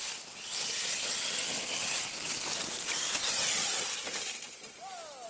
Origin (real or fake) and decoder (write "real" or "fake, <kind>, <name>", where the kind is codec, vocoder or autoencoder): real